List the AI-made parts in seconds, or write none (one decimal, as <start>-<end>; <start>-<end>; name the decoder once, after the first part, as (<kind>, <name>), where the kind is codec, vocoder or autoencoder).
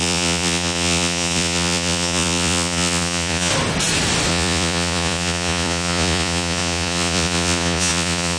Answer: 0.0-3.5 (vocoder, Vocos); 4.3-8.4